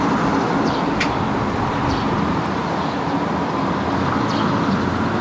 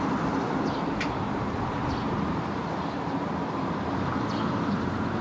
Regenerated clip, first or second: second